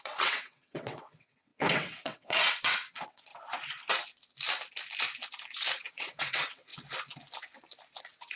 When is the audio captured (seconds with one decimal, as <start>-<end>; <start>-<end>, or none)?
3.3-5.9; 6.7-8.0